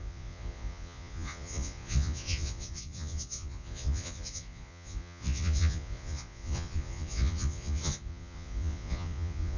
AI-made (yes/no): yes